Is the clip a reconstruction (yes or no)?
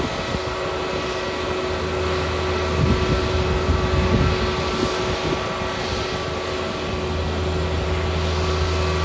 no